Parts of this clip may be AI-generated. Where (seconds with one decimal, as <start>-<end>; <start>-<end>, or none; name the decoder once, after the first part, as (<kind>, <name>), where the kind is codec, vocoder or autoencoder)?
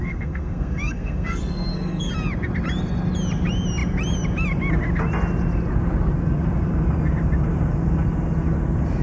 0.0-2.1 (codec, SNAC)